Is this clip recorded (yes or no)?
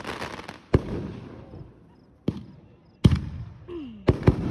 yes